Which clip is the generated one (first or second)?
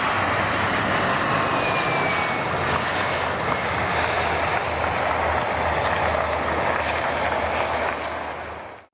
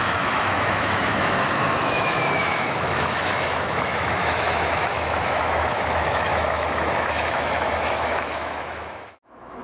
second